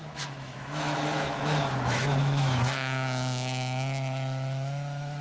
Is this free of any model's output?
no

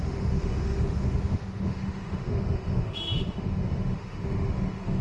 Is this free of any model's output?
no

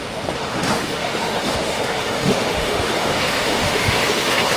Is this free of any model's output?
no